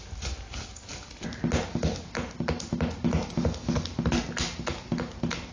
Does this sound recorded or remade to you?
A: recorded